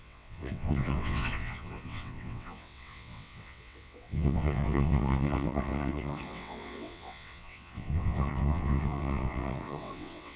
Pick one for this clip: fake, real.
fake